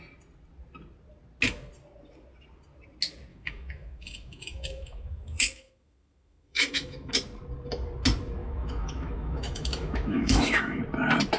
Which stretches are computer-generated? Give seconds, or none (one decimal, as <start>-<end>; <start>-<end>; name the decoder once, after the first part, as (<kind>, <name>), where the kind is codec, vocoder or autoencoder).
3.3-7.1 (autoencoder, DAC-VAE); 8.4-10.8